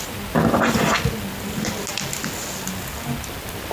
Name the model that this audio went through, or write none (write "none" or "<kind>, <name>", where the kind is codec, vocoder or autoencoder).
none